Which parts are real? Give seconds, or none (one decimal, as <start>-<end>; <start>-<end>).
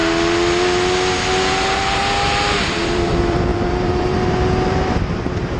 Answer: 0.0-1.5; 2.0-2.6